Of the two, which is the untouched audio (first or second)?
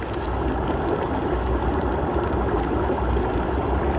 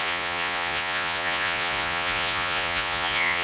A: first